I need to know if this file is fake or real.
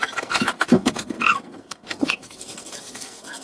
fake